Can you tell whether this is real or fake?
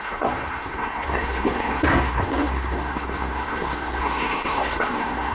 fake